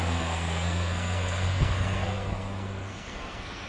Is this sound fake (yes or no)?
yes